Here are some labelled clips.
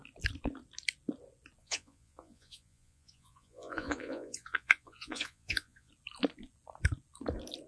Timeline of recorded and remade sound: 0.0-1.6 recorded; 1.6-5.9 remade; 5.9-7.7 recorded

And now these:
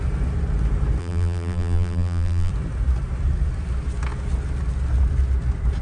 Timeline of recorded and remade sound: 0.0-1.0 recorded; 1.0-2.5 remade; 2.5-5.8 recorded